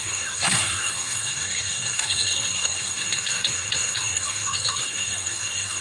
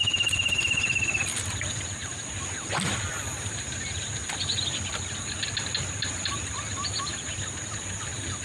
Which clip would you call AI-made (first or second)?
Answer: first